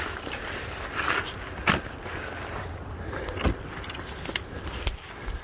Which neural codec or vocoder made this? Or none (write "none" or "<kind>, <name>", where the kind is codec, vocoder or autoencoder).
none